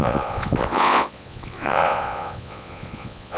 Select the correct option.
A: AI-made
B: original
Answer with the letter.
A